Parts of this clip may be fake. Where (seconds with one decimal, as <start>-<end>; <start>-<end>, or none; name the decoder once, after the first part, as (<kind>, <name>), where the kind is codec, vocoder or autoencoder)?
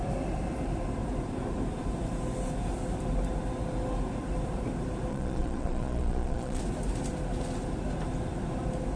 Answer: 5.1-6.6 (vocoder, Vocos)